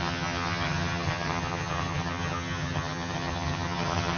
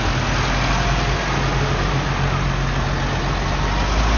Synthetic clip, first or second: first